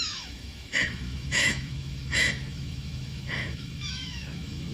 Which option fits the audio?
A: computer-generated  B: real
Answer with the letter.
A